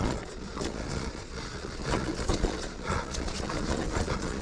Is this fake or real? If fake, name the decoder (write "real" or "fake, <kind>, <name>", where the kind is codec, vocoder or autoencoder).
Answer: fake, vocoder, Vocos